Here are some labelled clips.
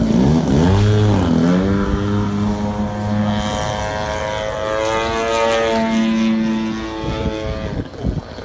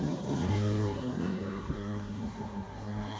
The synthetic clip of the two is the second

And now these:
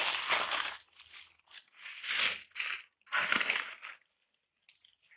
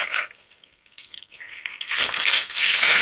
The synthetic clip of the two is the second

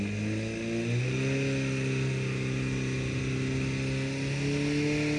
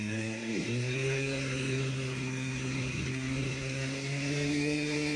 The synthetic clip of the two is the second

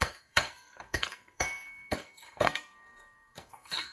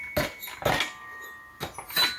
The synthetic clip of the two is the first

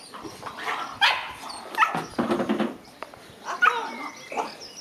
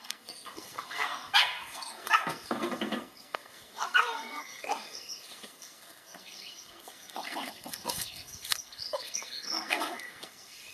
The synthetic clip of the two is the second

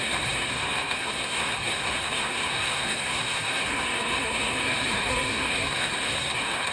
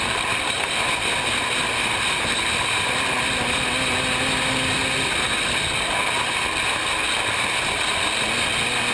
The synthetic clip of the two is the first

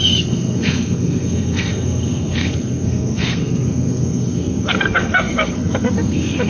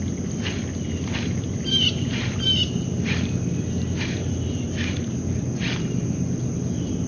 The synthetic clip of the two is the first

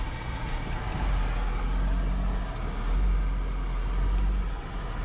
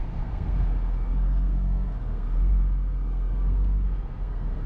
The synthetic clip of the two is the second